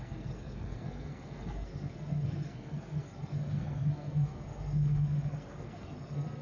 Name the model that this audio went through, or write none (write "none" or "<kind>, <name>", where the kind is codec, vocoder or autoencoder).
codec, SNAC